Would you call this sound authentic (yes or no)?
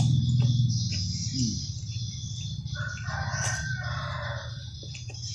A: yes